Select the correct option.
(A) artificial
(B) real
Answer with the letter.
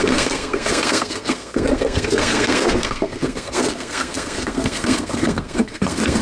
A